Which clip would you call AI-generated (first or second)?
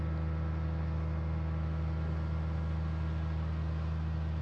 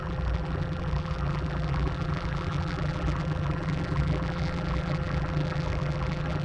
second